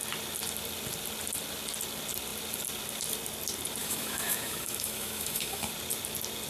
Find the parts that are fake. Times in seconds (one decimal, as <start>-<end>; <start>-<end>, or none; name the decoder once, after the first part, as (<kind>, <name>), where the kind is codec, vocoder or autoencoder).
3.8-5.7 (autoencoder, DAC-VAE)

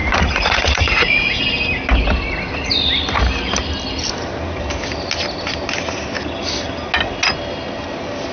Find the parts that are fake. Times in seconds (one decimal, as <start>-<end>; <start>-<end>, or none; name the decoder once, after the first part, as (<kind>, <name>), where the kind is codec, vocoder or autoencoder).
0.0-1.4 (vocoder, Vocos)

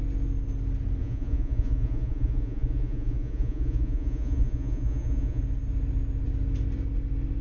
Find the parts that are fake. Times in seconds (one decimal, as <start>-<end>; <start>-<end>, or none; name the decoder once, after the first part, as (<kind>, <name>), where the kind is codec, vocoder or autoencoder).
1.0-5.4 (vocoder, Vocos)

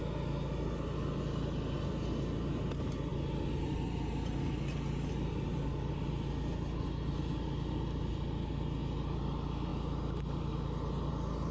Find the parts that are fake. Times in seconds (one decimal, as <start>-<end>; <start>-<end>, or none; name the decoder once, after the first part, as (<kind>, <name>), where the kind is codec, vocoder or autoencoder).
none

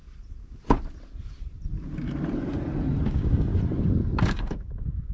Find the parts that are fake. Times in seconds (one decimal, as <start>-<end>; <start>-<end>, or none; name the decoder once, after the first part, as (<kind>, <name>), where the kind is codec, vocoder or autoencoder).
3.1-3.5 (codec, DAC); 4.2-5.1